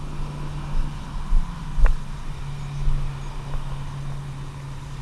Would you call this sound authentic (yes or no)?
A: yes